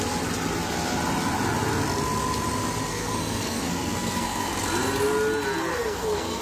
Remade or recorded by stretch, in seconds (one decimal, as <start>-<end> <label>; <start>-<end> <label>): 0.0-2.9 recorded; 2.9-4.5 remade; 4.5-5.7 recorded; 5.7-6.4 remade